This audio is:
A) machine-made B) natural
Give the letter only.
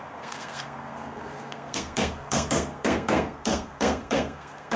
A